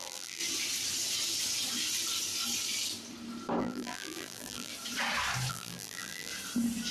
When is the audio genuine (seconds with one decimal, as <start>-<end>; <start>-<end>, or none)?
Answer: 0.4-3.6; 4.7-5.5; 6.3-6.9